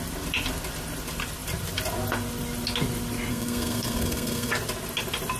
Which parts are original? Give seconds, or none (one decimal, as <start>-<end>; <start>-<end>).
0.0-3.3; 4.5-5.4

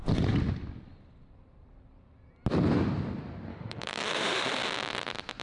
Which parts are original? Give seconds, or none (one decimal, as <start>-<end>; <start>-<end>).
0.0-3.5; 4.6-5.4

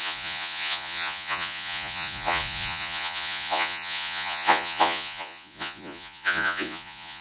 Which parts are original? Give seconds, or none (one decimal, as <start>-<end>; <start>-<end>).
none

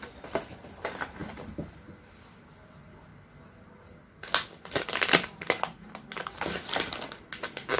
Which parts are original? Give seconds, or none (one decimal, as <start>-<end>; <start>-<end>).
0.0-7.8

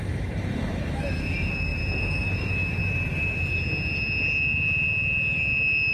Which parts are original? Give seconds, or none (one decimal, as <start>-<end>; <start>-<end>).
2.8-5.9

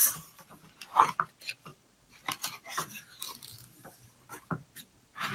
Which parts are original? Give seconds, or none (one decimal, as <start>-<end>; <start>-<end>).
0.6-1.7